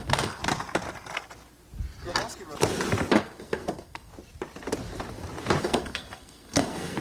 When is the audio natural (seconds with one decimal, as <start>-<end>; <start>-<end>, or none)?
0.4-3.1; 4.1-5.6